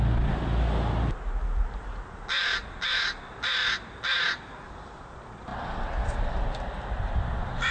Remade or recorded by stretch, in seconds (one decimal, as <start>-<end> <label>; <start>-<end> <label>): 0.0-7.7 recorded